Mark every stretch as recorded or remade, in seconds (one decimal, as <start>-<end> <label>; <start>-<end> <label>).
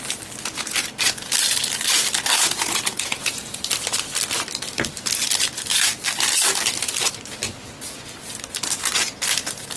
0.0-2.3 recorded; 2.3-3.6 remade; 3.6-9.8 recorded